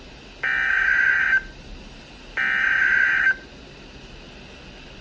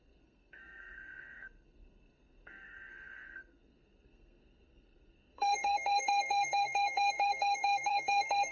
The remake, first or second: second